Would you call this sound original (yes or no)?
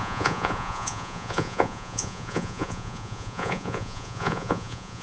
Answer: no